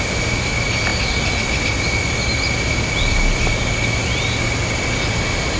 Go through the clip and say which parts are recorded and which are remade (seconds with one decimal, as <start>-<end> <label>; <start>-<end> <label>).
0.0-5.6 recorded